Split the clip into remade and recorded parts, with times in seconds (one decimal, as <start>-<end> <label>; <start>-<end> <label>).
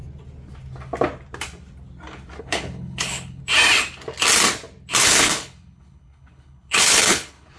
0.0-2.4 recorded; 2.4-3.4 remade; 3.4-5.0 recorded; 5.0-7.6 remade